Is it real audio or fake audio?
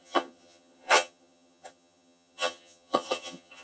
fake